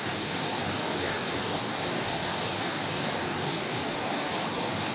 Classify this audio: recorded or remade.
remade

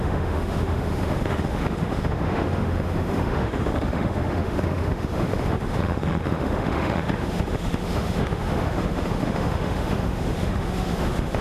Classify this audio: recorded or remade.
remade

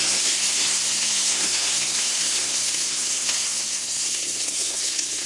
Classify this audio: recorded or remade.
remade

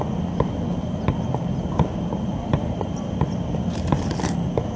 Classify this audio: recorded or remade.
remade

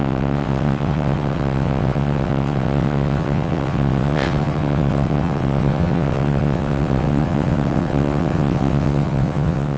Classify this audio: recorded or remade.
remade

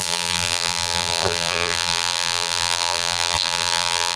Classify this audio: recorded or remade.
remade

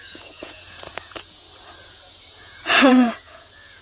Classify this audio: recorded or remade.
remade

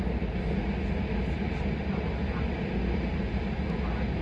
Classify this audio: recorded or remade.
recorded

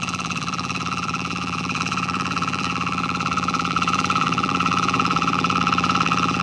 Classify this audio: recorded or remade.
remade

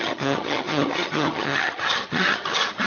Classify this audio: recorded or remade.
remade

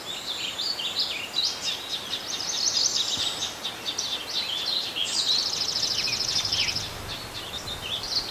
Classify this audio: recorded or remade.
recorded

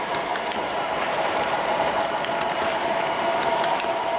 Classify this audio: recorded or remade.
remade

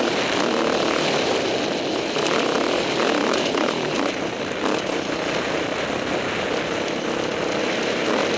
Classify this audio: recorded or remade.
recorded